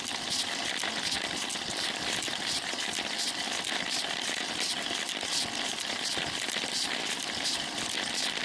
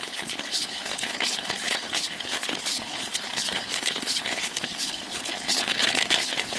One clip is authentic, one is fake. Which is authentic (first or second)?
first